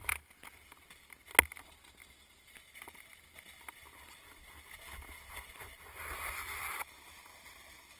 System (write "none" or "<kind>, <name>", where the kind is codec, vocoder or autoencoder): none